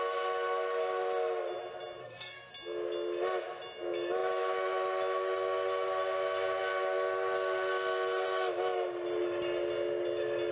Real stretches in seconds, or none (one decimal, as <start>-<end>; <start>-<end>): 0.0-2.0; 2.5-10.5